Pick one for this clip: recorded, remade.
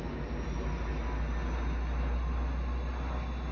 recorded